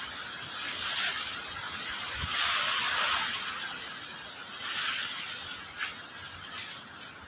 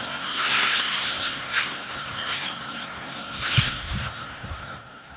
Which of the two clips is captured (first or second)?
first